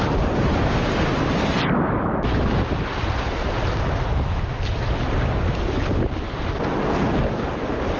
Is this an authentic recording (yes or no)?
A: yes